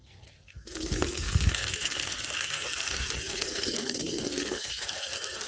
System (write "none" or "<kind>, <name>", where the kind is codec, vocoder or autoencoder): codec, SNAC